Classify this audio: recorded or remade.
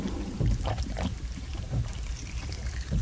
remade